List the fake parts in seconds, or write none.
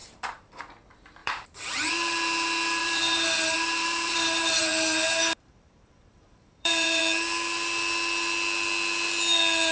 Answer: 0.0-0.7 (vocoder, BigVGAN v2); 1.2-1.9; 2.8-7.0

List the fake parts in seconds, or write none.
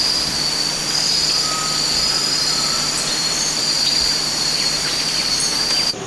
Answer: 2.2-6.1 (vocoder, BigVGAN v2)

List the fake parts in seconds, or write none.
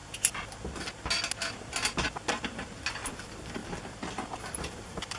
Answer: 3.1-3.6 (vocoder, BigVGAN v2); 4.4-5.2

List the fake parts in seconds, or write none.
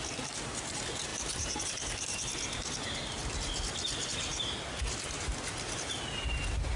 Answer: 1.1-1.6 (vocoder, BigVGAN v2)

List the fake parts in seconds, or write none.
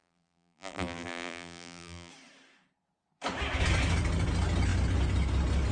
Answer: 0.0-2.1 (vocoder, BigVGAN v2)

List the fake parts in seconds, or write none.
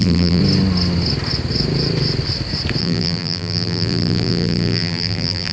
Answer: 0.0-0.4 (vocoder, BigVGAN v2); 2.8-5.5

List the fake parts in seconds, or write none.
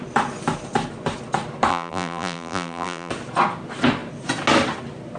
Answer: 1.7-3.1 (vocoder, BigVGAN v2)